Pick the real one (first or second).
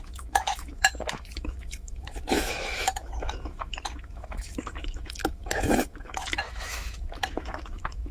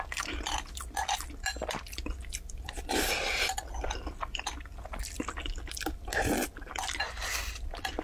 second